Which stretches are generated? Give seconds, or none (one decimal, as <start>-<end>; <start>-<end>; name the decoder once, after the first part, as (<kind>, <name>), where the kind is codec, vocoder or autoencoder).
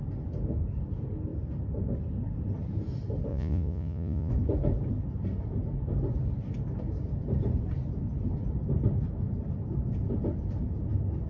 3.3-4.3 (vocoder, Vocos)